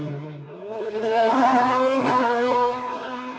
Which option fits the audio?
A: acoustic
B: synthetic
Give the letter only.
B